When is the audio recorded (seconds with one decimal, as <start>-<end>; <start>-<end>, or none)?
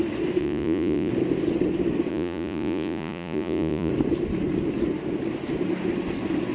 0.0-0.4; 1.1-2.1; 3.9-6.5